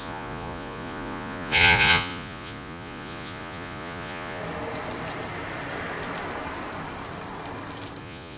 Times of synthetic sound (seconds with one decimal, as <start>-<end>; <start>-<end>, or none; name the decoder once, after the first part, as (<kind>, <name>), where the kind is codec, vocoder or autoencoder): 0.0-4.4 (vocoder, Vocos); 8.0-8.4